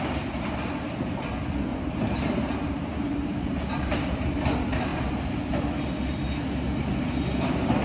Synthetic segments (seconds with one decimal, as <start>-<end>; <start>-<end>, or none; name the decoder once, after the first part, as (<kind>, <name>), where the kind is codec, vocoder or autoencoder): 1.7-4.3 (vocoder, BigVGAN v2)